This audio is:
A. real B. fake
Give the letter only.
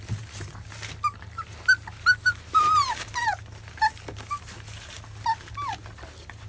A